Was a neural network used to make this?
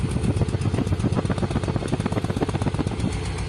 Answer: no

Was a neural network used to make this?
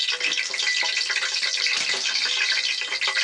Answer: no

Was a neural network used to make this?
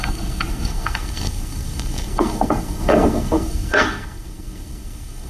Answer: yes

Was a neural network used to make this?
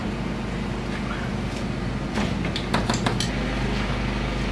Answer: no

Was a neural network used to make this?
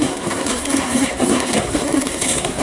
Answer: yes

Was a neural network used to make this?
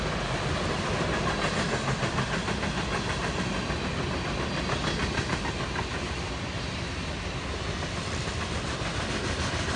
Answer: no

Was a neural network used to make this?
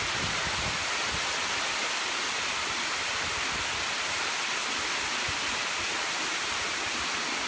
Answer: no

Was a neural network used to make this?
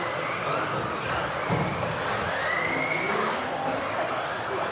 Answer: no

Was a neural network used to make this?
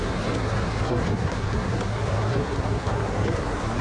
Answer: yes